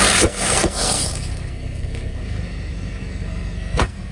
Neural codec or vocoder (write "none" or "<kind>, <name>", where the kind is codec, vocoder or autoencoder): codec, SNAC